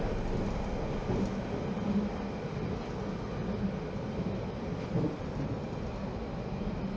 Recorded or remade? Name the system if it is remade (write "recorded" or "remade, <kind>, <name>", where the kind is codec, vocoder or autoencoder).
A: recorded